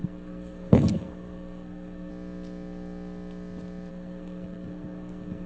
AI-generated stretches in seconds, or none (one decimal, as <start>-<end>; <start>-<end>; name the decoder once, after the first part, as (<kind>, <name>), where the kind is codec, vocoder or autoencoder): 0.0-2.1 (codec, SNAC); 3.9-5.5